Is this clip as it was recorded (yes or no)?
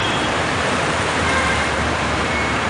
no